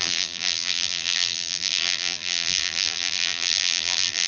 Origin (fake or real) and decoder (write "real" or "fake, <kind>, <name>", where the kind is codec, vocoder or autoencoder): fake, vocoder, BigVGAN v2